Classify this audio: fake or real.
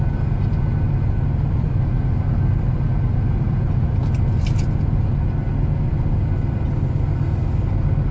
real